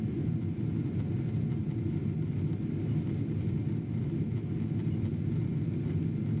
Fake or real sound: real